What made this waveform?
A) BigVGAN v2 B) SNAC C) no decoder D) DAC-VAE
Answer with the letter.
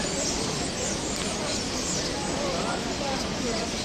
C